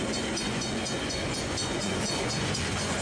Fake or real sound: fake